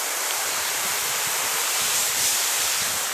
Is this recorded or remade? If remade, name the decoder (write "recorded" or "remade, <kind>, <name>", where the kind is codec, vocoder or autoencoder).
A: remade, vocoder, BigVGAN v2